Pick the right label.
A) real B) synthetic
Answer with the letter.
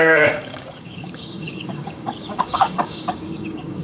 B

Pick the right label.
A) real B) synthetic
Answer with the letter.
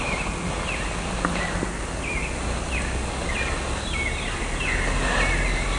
A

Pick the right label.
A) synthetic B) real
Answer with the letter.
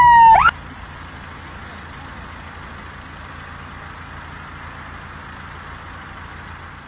B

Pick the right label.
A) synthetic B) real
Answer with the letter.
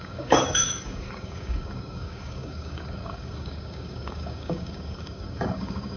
A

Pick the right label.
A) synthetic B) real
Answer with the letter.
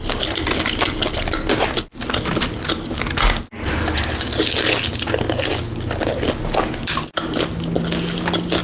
B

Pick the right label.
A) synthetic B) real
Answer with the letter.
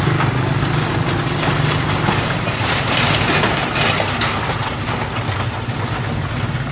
B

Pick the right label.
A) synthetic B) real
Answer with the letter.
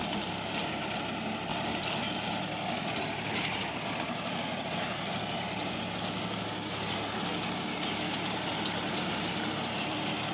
B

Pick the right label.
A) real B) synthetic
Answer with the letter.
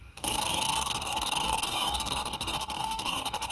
B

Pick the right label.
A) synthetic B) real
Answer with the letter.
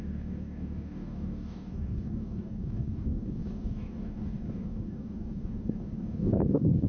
A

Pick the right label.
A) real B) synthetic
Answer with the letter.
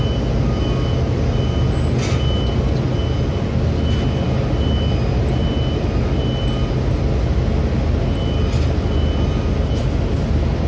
A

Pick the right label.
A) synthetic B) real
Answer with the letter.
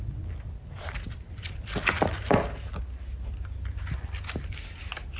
B